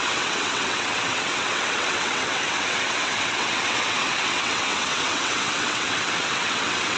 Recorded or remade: remade